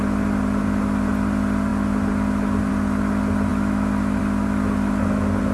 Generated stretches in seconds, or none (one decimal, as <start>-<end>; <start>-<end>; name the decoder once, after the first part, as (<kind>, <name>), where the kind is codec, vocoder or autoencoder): none